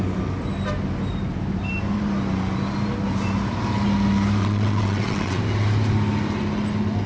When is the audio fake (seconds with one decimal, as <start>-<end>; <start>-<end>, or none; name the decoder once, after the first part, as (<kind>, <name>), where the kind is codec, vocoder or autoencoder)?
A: 4.4-5.4 (vocoder, WaveNeXt)